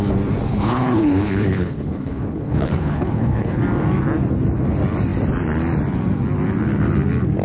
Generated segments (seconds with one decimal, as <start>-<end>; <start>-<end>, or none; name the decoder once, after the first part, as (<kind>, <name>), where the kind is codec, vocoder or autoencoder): 0.5-3.6 (codec, HILCodec)